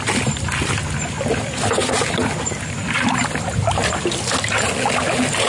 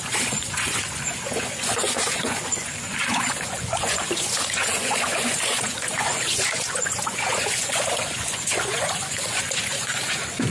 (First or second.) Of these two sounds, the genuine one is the first